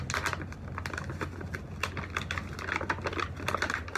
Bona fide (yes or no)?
yes